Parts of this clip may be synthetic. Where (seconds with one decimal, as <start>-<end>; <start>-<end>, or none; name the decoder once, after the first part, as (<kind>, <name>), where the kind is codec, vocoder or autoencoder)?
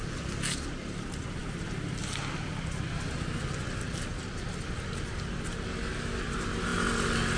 none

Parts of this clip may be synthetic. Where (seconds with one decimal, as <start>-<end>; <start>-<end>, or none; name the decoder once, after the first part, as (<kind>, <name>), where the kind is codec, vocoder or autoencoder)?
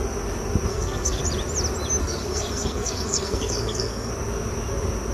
0.7-1.2 (codec, SNAC); 2.0-4.1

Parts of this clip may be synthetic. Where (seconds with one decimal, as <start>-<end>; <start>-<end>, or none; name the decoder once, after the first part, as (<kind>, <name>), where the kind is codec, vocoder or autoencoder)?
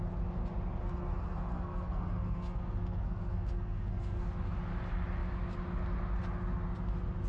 0.8-4.3 (codec, SNAC)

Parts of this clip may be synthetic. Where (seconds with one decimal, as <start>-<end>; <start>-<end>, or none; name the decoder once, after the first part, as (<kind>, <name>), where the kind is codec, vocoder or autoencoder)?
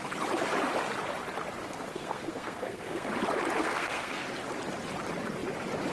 1.6-3.1 (codec, SNAC); 3.6-4.2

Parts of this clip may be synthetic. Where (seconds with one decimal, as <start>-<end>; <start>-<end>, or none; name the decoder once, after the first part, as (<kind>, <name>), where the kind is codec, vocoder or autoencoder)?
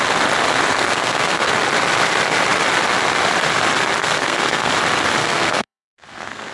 0.7-1.5 (codec, SNAC); 4.0-4.7; 5.2-6.5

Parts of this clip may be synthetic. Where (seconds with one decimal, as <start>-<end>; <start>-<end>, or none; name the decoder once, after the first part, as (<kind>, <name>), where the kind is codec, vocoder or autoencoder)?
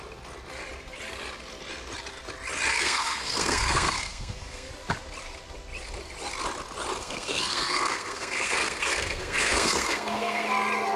2.7-4.7 (codec, SNAC); 7.0-10.5